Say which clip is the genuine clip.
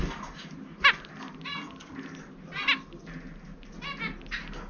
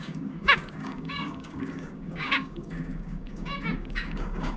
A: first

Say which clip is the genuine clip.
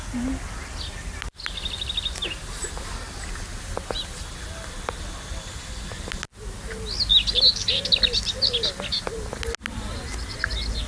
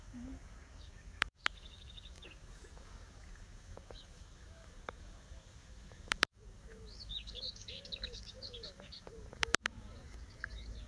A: first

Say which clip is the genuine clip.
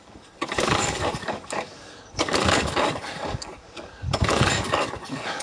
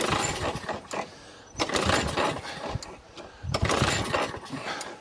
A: second